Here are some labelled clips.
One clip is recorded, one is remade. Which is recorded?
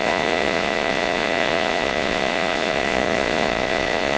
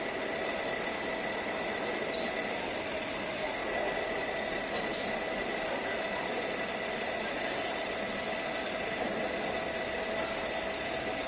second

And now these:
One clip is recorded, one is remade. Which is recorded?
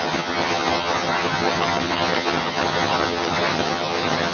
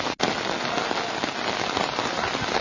second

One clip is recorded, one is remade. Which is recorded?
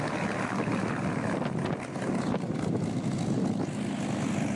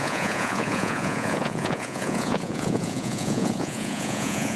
first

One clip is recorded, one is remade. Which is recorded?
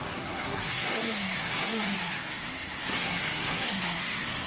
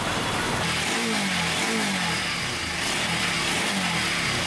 second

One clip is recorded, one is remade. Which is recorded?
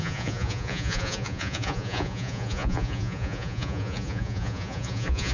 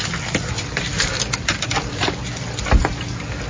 second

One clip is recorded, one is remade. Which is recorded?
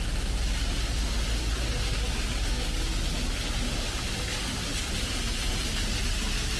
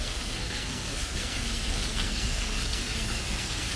first